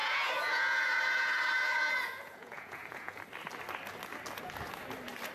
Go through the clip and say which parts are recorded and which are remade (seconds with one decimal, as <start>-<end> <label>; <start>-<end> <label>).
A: 0.0-3.2 remade; 3.2-5.3 recorded